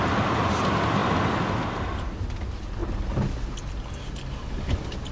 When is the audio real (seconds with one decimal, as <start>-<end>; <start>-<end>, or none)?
0.0-5.1

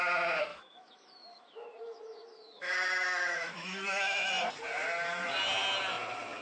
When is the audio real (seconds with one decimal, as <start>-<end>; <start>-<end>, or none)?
0.0-0.5; 4.3-6.4

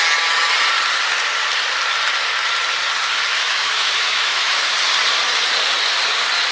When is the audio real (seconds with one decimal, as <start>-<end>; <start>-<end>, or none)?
0.0-3.3; 4.7-6.5

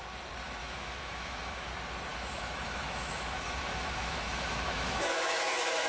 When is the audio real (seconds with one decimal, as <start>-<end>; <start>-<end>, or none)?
0.0-0.6; 1.7-2.1